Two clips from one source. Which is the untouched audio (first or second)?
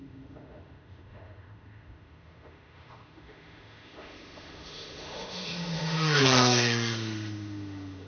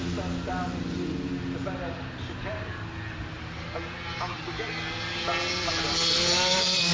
second